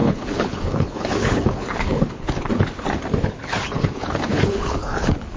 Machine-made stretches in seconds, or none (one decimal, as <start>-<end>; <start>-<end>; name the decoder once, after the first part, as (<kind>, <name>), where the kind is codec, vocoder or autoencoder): 0.0-2.5 (codec, HILCodec); 3.2-5.4